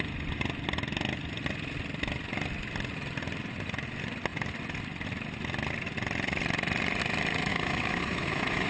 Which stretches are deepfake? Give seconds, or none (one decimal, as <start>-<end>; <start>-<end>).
7.5-8.7